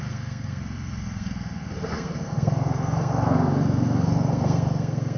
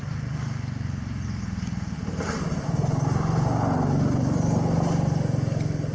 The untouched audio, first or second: second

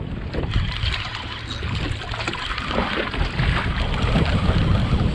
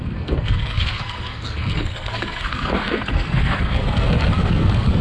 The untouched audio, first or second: first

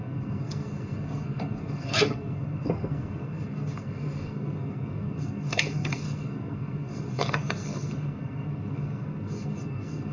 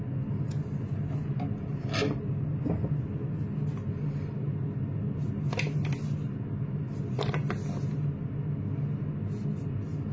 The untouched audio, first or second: second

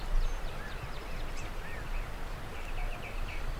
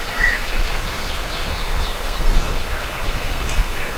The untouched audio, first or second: first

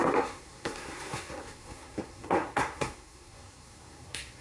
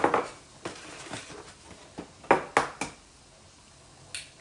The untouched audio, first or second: second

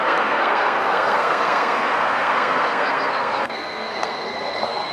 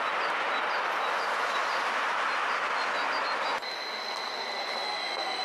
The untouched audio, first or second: second